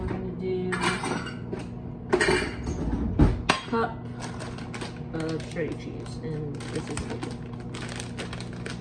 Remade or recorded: recorded